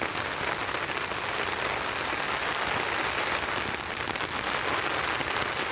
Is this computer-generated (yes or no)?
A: no